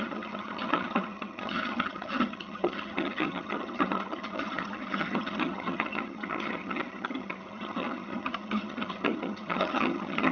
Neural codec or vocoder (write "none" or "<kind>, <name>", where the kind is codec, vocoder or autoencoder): vocoder, HiFi-GAN